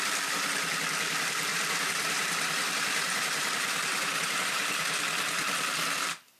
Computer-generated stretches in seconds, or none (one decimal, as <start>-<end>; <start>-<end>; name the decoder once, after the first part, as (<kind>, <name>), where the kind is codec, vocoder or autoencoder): 1.5-5.0 (vocoder, BigVGAN v2)